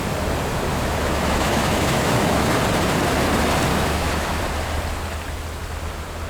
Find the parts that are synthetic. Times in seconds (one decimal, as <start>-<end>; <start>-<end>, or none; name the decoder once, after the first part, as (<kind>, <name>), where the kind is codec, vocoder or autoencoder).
0.7-2.5 (autoencoder, DAC-VAE); 3.7-4.4